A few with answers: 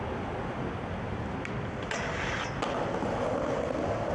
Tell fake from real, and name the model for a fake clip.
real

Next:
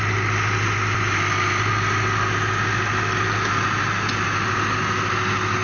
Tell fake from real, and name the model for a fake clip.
real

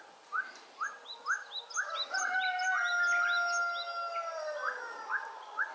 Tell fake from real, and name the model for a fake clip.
real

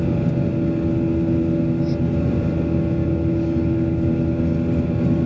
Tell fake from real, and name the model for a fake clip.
real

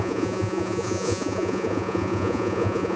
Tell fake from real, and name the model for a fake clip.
fake, vocoder, Vocos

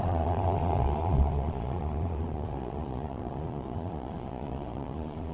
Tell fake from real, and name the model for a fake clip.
fake, vocoder, Vocos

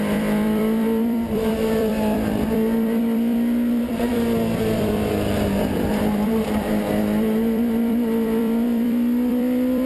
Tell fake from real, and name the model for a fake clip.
fake, vocoder, BigVGAN v2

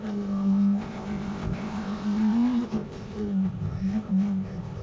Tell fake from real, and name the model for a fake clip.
fake, codec, ZipCodec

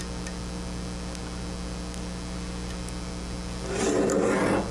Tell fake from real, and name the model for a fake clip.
real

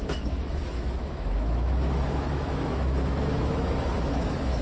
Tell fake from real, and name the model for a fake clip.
fake, autoencoder, DAC-VAE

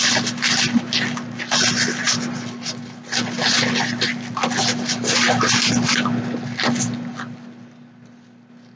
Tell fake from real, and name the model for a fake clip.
real